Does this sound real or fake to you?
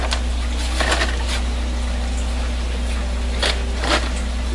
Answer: real